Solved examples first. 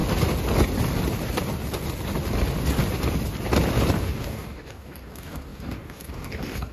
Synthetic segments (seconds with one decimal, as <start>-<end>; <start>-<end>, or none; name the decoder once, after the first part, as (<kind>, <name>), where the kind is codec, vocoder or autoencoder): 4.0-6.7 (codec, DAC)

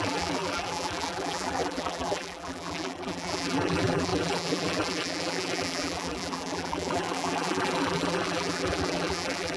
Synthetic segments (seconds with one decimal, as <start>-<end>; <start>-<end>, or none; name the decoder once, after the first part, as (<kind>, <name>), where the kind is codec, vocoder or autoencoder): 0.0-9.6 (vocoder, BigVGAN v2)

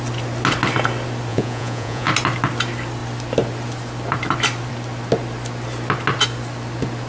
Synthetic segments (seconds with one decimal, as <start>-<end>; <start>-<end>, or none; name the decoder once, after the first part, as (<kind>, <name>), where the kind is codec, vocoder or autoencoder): 1.3-2.1 (vocoder, Vocos)